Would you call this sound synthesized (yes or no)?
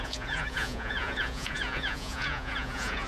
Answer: yes